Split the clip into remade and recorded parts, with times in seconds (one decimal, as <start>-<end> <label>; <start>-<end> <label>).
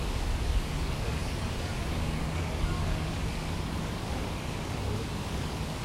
0.0-5.8 remade